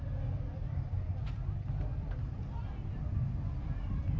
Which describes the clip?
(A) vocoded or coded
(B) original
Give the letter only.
A